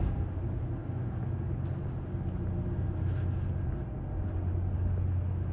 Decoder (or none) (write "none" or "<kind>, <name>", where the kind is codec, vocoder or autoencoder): none